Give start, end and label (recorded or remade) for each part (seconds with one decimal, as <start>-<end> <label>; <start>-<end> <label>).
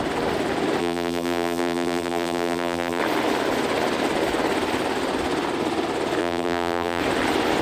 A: 0.0-0.8 recorded; 0.8-3.0 remade; 3.0-6.2 recorded; 6.2-7.0 remade; 7.0-7.6 recorded